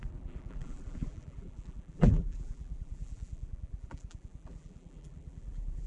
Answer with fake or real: fake